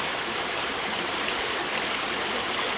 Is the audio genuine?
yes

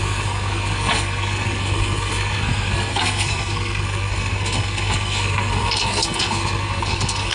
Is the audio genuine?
no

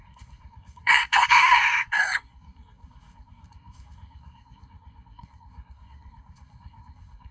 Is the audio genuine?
no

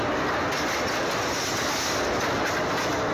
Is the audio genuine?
yes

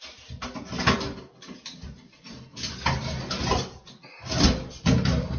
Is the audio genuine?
yes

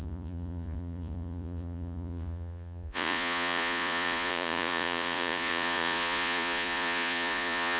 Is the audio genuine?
no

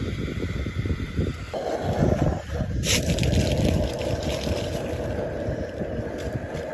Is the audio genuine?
yes